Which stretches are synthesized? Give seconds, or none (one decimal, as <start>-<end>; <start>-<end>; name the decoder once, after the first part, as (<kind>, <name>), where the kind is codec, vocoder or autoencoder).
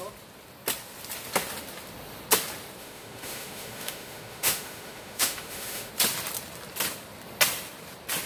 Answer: 2.8-5.9 (autoencoder, DAC-VAE)